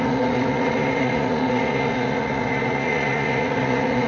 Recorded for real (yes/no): no